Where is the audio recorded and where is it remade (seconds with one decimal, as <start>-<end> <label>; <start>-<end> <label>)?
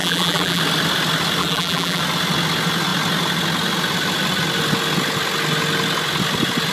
0.0-0.6 remade; 0.6-1.4 recorded; 1.4-2.0 remade; 2.0-6.7 recorded